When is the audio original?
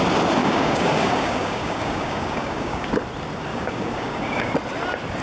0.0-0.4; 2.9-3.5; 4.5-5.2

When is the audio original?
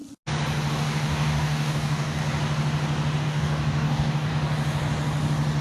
0.0-0.7; 2.2-3.2; 4.3-5.6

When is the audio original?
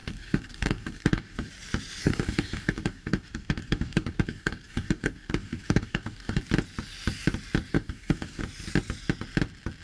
1.5-2.0; 6.4-7.7; 8.4-9.8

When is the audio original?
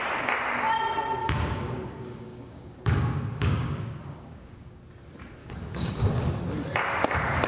0.0-1.2; 4.8-5.4; 5.9-7.5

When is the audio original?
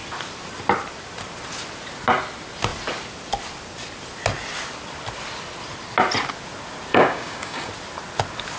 0.0-6.9; 7.7-8.6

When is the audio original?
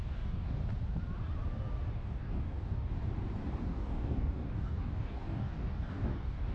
0.6-1.9; 2.9-3.6